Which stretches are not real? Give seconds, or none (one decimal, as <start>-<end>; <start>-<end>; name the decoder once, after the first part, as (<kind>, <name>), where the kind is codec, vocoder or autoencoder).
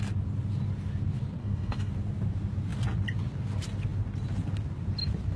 1.4-1.9 (codec, DAC)